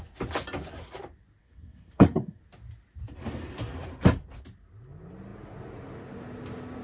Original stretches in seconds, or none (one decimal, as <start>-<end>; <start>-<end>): 0.0-1.4; 2.4-6.8